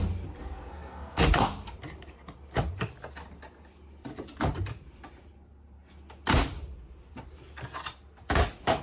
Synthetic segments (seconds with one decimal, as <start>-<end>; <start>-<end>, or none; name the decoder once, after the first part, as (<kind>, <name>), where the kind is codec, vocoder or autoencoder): 0.4-1.2 (codec, SNAC)